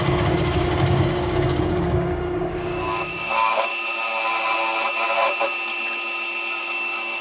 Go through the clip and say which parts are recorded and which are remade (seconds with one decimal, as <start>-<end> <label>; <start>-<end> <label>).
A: 0.0-3.7 remade; 3.7-6.6 recorded; 6.6-7.2 remade